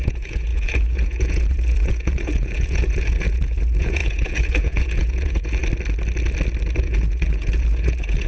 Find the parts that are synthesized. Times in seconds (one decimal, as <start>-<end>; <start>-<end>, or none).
0.0-5.6; 6.8-8.3